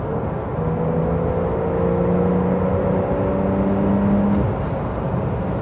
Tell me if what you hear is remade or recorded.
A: recorded